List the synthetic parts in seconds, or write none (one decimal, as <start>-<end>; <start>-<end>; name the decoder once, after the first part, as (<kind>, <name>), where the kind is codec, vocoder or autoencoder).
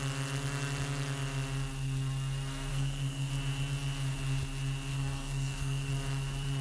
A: 2.7-3.3 (codec, SNAC); 4.9-5.9